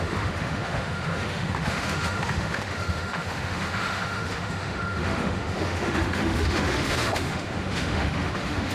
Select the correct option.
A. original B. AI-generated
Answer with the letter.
B